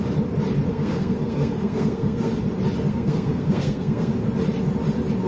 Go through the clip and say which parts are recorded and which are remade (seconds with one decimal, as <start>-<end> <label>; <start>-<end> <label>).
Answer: 0.0-0.7 recorded; 0.7-2.3 remade; 2.3-2.9 recorded; 2.9-4.1 remade; 4.1-5.3 recorded